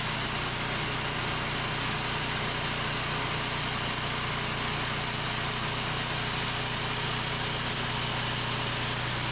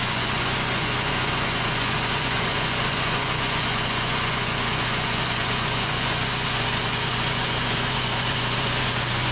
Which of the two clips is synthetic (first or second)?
second